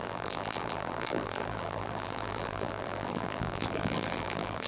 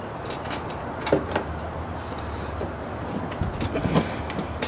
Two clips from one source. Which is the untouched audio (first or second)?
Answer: second